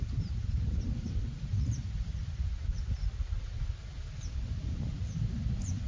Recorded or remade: recorded